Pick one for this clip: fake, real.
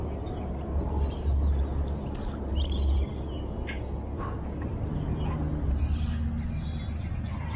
real